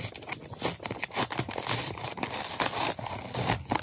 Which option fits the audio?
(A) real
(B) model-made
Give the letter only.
A